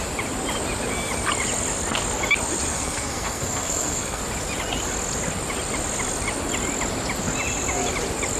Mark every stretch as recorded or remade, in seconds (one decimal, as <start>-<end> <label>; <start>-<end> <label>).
0.0-2.7 recorded; 2.7-4.2 remade; 4.2-8.4 recorded

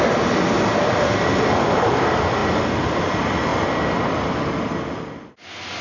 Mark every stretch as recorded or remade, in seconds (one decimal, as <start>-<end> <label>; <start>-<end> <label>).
0.0-5.8 recorded

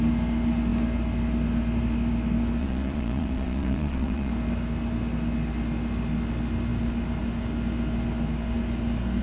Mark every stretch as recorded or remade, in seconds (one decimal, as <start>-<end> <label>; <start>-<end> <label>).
0.0-2.6 recorded; 2.6-4.3 remade; 4.3-9.2 recorded

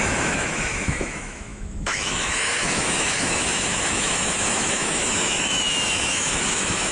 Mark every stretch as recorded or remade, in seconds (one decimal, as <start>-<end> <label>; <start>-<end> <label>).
0.0-6.9 remade